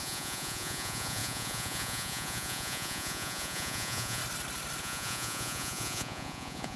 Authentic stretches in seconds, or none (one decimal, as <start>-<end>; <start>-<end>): 4.2-4.8